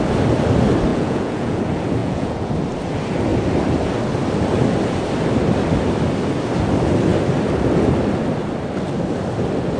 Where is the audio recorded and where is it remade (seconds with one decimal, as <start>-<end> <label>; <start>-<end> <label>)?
0.0-0.9 recorded; 0.9-1.6 remade; 1.6-2.0 recorded; 2.0-2.5 remade; 2.5-9.8 recorded